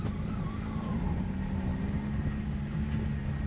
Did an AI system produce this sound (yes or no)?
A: no